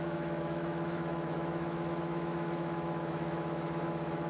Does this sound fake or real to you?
fake